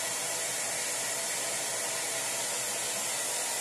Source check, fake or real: real